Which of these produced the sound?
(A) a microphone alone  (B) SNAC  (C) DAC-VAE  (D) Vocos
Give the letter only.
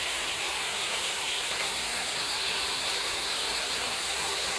B